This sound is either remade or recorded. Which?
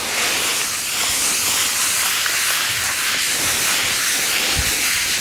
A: recorded